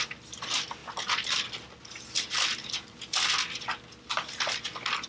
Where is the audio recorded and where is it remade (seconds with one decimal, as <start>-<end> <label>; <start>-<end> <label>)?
0.0-5.1 recorded